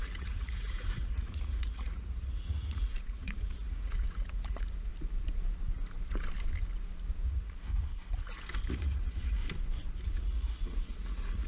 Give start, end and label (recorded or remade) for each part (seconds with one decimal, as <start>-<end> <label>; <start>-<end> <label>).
0.0-4.9 remade; 4.9-7.3 recorded; 7.3-7.7 remade; 7.7-8.7 recorded; 8.7-9.4 remade; 9.4-10.0 recorded; 10.0-11.5 remade